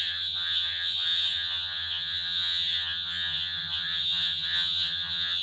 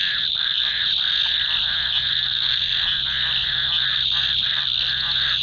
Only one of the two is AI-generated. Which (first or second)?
first